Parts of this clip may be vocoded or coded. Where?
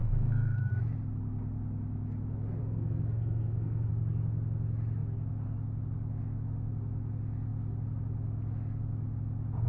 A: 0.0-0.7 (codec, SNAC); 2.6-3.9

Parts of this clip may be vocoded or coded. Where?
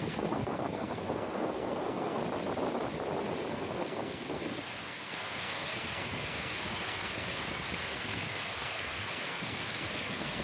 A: 0.0-2.2 (codec, SNAC); 3.5-10.4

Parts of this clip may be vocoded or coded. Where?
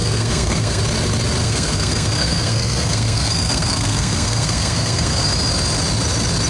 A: 0.0-0.8 (codec, SNAC); 1.4-5.3